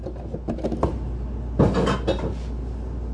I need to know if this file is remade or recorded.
recorded